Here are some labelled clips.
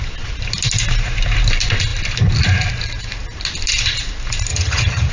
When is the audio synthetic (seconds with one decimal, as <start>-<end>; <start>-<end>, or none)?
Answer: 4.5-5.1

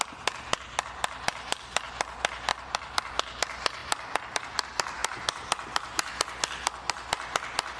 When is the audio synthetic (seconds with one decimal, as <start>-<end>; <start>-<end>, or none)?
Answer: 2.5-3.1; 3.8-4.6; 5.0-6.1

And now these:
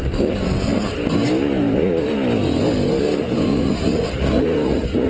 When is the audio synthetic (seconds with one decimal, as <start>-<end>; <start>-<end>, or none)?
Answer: 3.5-5.1

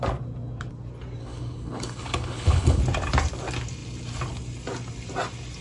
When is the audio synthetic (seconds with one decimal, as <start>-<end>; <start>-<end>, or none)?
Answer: 1.2-2.8

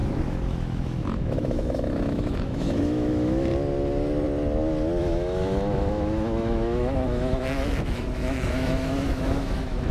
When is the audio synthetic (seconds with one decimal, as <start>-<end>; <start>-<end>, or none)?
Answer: 0.0-3.5; 5.0-9.9